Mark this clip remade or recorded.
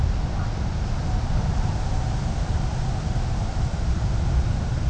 recorded